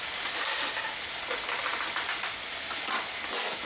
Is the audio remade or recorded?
recorded